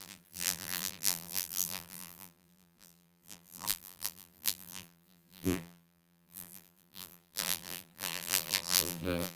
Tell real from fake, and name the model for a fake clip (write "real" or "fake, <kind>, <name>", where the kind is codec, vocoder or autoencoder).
fake, vocoder, BigVGAN v2